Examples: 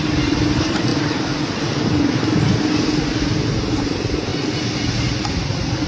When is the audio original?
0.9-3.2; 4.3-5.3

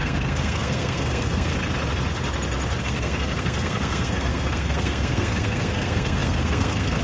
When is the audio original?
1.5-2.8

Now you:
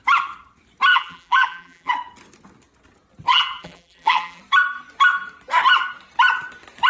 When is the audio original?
0.0-0.9; 1.9-3.3; 4.4-6.9

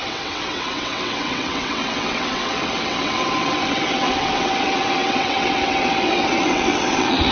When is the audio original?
none